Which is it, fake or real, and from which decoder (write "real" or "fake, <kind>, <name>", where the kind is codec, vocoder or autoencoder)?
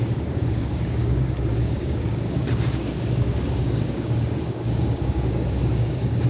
fake, codec, DAC